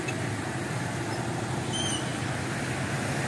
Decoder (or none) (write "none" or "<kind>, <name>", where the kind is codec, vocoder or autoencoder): none